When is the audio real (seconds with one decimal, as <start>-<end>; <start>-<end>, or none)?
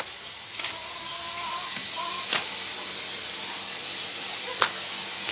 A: 0.0-5.3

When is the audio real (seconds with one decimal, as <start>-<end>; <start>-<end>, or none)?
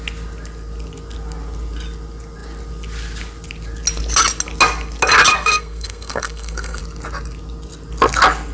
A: 0.0-5.3; 6.8-8.5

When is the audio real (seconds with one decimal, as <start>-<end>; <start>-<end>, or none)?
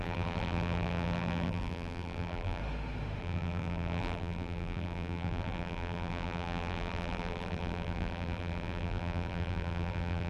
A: 2.6-3.2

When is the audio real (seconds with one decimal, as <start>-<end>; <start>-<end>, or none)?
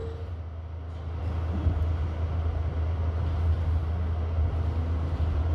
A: 0.0-5.5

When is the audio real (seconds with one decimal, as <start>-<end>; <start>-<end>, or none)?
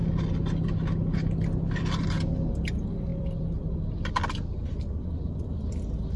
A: 0.0-3.1; 4.1-6.2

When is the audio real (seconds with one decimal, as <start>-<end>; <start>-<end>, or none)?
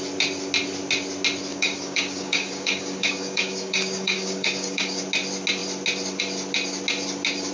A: 0.0-1.5; 5.0-7.5